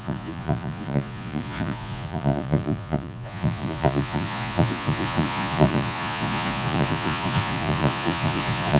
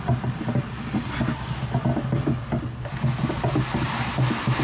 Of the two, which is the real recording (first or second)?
second